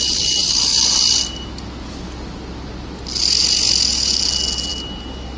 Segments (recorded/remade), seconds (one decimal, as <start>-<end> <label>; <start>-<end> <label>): 0.0-5.4 recorded